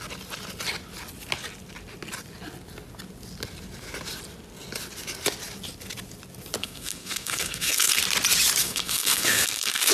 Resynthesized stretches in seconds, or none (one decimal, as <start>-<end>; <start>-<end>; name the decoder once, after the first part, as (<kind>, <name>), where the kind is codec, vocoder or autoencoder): 6.6-8.0 (codec, SNAC); 8.6-9.9